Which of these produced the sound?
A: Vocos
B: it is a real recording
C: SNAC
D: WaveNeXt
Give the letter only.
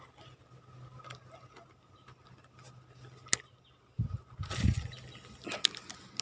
B